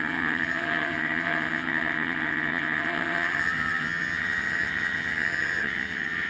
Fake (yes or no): yes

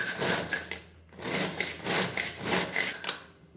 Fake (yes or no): no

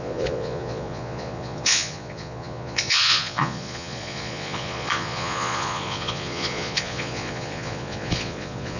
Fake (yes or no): yes